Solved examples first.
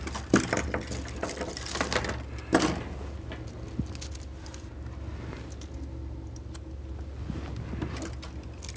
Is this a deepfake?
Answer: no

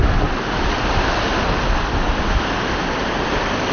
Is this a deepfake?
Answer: no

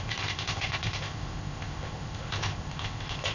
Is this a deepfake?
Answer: yes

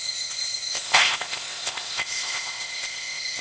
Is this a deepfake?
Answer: yes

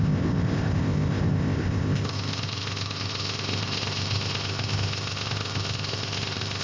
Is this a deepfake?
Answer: yes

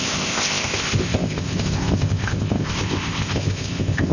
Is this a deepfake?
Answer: yes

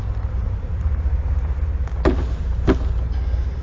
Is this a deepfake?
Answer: no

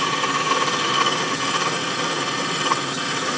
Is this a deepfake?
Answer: no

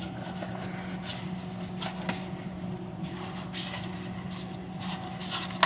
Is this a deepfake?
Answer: no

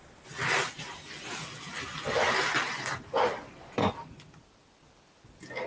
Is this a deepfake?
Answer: no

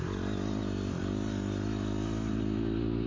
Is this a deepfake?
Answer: no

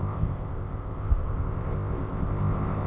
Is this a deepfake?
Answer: yes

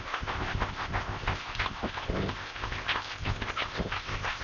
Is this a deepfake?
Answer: yes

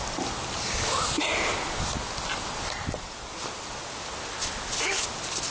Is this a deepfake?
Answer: no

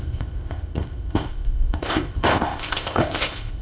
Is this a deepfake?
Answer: yes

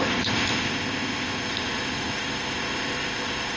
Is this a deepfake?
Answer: yes